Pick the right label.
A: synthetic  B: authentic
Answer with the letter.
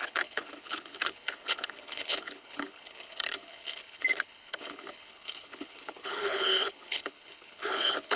A